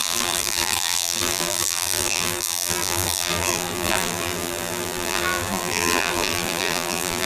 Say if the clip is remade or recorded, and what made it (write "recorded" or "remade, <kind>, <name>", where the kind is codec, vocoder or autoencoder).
remade, vocoder, BigVGAN v2